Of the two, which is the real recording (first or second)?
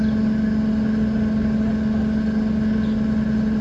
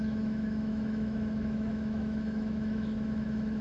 first